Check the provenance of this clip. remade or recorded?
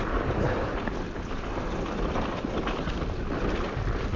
recorded